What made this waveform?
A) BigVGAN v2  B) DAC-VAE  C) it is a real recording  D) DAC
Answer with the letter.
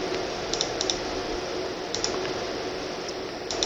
A